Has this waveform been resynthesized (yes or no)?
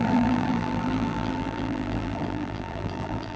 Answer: yes